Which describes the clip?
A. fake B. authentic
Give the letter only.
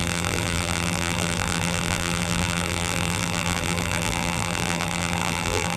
A